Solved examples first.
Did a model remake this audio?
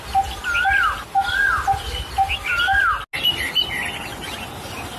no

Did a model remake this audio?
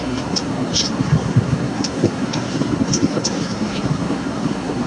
yes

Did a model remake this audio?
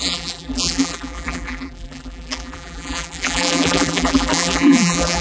yes